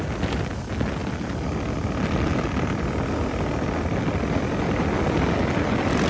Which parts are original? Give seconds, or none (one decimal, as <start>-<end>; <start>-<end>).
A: 0.0-6.1